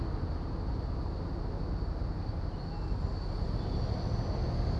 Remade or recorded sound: recorded